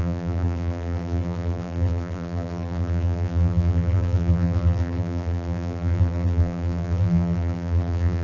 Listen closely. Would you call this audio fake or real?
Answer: fake